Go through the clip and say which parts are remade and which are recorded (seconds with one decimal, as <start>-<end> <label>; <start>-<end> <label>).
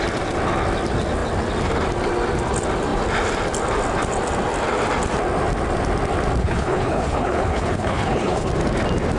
0.0-6.4 recorded; 6.4-8.5 remade; 8.5-9.2 recorded